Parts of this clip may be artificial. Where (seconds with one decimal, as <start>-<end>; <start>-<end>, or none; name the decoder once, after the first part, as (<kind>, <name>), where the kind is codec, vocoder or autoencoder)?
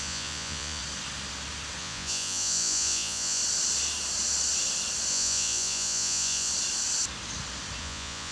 0.0-0.8 (vocoder, Vocos); 1.8-3.4; 5.1-6.5; 7.8-8.3